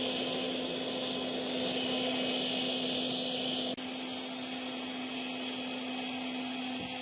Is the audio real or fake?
real